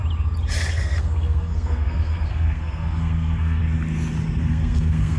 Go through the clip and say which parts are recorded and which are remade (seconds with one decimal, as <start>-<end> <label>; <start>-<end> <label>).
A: 0.0-0.7 recorded; 0.7-3.6 remade; 3.6-4.4 recorded; 4.4-5.2 remade